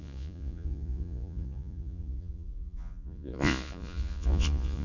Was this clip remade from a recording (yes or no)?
yes